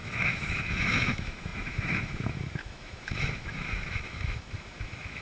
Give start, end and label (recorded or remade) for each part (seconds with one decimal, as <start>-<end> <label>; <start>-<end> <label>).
0.0-5.2 remade